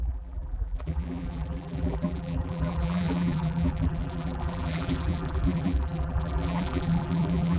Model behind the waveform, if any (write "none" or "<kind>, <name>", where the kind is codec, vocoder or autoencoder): vocoder, BigVGAN v2